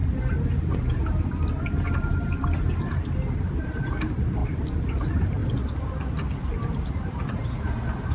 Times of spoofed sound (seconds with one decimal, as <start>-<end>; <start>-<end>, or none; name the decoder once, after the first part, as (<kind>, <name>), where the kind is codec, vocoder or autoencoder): 3.6-4.4 (vocoder, BigVGAN v2); 4.9-5.4; 6.9-8.1